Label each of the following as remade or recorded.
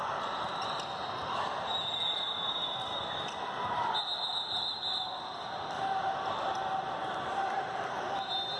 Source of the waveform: recorded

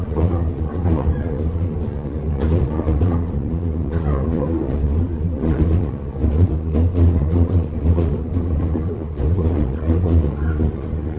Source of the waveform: remade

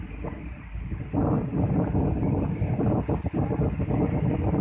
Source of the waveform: recorded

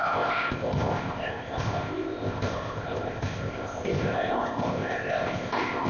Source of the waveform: remade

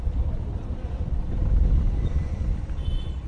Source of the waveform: remade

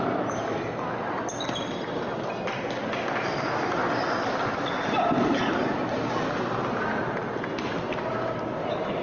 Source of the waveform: recorded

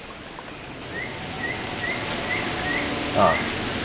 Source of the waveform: recorded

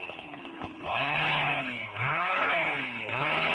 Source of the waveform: remade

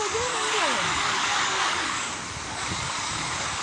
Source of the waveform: remade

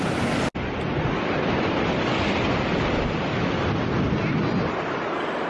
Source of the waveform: recorded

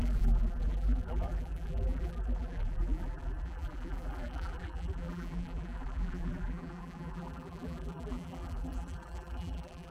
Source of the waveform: remade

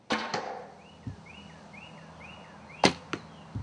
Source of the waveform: recorded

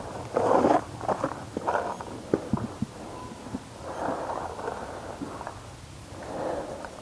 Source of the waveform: recorded